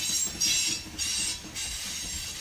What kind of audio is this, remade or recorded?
recorded